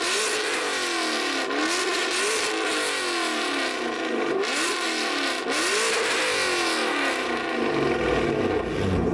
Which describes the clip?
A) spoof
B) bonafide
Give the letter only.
B